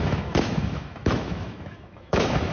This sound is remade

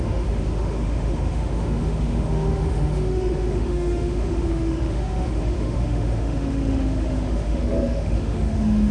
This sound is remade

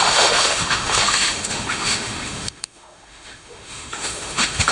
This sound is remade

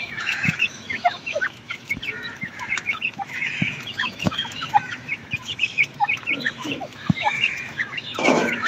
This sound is remade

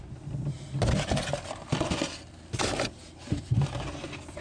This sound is recorded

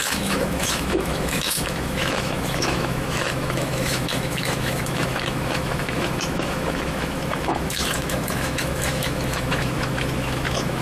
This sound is remade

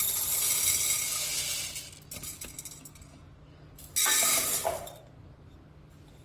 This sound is recorded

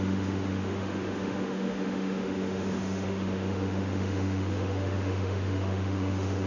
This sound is remade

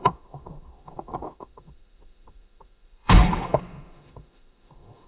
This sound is remade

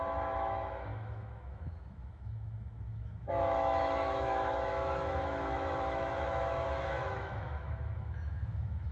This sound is remade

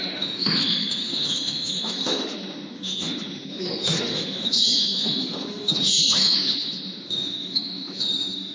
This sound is remade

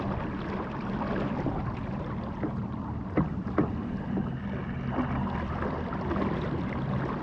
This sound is recorded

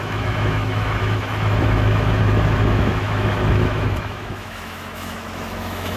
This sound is remade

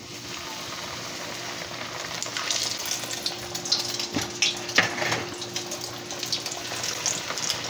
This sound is recorded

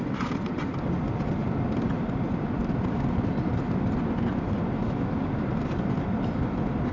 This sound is recorded